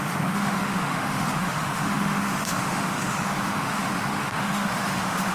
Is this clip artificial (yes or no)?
yes